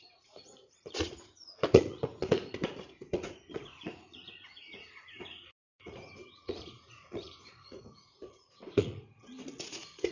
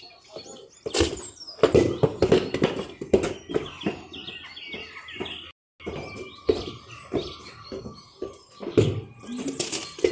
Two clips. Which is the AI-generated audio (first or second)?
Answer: first